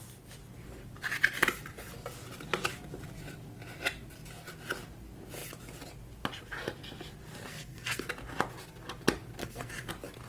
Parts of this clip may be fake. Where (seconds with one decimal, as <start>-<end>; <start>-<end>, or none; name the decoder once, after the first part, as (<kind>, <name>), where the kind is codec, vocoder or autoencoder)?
7.5-8.1 (codec, SNAC); 9.4-9.9